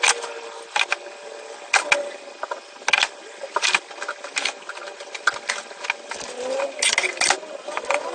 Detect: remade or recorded recorded